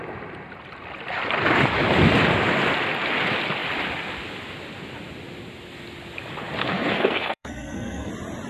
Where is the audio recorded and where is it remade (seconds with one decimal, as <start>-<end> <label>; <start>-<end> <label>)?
0.0-6.6 recorded; 6.6-8.1 remade; 8.1-8.5 recorded